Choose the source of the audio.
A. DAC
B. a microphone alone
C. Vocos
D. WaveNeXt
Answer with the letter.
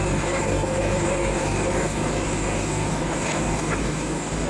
A